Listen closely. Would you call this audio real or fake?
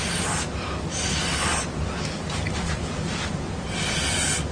real